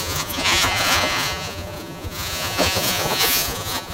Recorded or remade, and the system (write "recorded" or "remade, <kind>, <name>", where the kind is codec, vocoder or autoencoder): remade, vocoder, Vocos